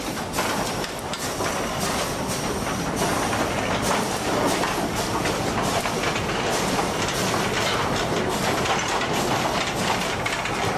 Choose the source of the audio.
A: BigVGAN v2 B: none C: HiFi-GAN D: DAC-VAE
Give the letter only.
B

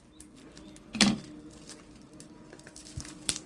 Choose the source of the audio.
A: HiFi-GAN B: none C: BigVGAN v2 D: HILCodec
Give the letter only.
C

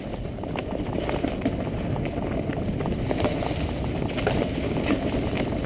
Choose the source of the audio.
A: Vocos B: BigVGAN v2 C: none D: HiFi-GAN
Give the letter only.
C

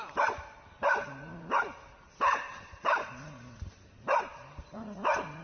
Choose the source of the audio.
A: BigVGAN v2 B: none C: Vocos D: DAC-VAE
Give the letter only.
A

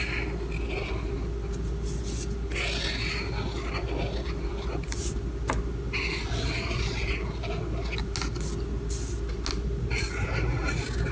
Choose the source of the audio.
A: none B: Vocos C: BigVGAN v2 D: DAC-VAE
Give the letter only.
A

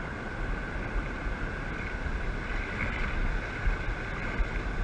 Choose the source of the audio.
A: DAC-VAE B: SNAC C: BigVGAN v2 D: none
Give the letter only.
D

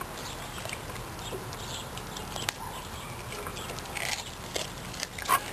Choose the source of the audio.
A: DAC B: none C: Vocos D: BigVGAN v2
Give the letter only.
B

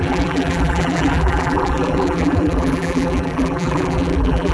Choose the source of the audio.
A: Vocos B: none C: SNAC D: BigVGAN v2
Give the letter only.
D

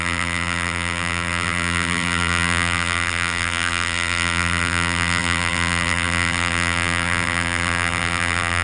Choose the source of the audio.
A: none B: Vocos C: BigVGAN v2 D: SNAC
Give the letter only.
C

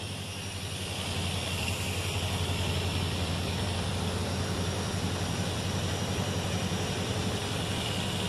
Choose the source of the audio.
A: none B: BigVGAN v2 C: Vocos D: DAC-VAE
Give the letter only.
B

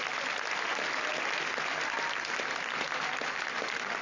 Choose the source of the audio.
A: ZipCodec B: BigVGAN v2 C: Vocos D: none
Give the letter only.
D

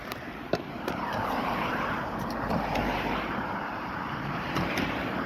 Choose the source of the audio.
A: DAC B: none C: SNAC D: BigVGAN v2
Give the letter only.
D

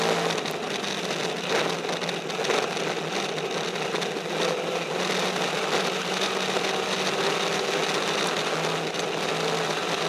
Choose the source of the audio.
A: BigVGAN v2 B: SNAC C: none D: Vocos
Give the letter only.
C